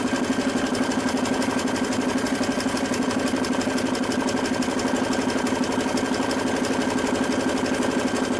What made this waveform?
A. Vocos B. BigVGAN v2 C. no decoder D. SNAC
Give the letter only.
C